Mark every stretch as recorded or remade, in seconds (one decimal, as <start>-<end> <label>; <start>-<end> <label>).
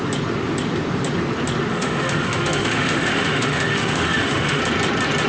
0.0-1.7 recorded; 1.7-4.6 remade; 4.6-5.3 recorded